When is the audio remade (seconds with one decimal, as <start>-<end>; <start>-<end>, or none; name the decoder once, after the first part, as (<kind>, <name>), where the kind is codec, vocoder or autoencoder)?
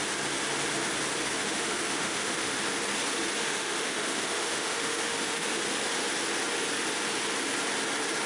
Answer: 1.4-2.6 (autoencoder, DAC-VAE); 3.4-5.6